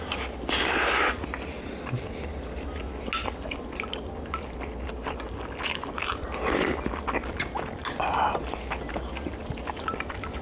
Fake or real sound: real